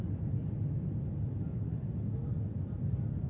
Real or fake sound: real